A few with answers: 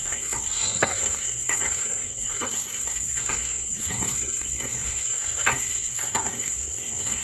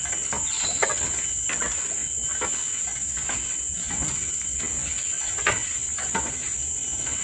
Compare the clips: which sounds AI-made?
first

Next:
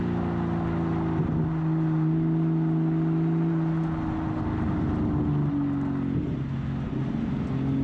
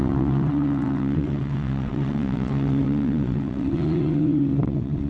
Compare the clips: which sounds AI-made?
second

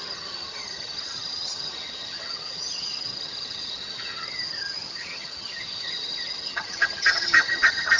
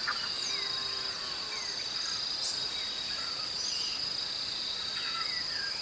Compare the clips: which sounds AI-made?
first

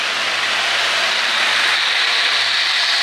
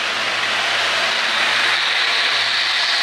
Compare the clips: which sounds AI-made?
first